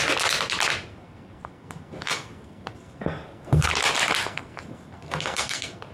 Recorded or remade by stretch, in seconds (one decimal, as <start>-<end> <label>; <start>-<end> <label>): 0.0-0.9 recorded; 0.9-3.7 remade; 3.7-4.2 recorded; 4.2-5.9 remade